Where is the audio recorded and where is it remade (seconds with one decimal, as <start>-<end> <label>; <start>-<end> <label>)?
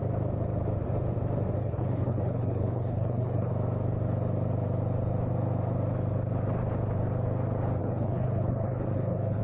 0.0-1.6 recorded; 1.6-3.5 remade; 3.5-7.8 recorded; 7.8-9.4 remade